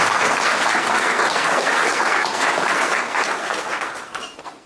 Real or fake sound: fake